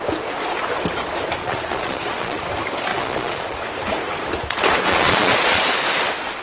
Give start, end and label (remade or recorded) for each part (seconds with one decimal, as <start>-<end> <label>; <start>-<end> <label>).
0.0-1.4 recorded; 1.4-2.4 remade; 2.4-2.9 recorded; 2.9-3.7 remade; 3.7-4.9 recorded; 4.9-5.6 remade; 5.6-6.4 recorded